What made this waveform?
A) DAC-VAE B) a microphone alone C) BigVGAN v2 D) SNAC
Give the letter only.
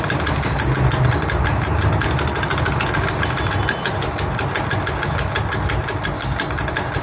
B